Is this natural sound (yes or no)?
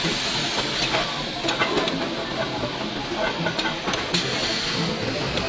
yes